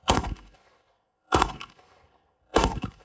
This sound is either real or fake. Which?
fake